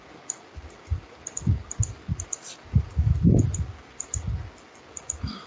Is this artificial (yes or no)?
no